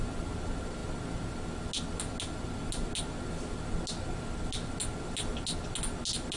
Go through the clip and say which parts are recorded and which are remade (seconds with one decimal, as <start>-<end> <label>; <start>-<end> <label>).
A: 0.0-6.4 recorded